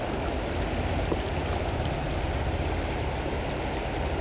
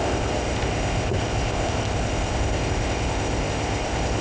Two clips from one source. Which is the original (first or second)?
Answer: first